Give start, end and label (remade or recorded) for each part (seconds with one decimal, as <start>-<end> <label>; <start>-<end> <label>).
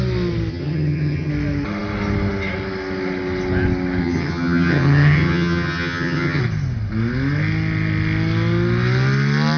0.0-0.5 recorded; 0.5-1.3 remade; 1.3-4.0 recorded; 4.0-6.4 remade; 6.4-9.6 recorded